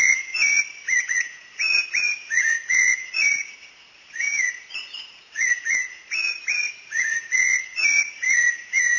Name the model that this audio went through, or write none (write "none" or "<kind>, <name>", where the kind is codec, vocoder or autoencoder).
vocoder, Vocos